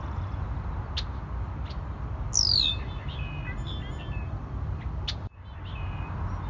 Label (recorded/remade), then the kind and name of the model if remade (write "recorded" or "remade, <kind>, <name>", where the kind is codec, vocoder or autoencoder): recorded